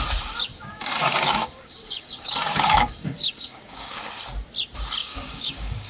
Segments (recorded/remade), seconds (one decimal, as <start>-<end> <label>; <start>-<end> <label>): 0.0-0.5 recorded; 0.5-4.0 remade; 4.0-5.0 recorded; 5.0-5.9 remade